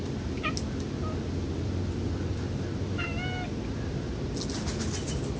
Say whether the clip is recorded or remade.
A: recorded